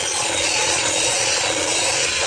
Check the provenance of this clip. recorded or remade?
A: remade